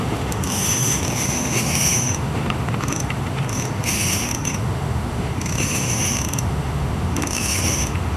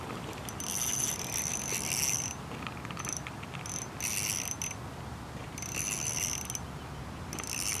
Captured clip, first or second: second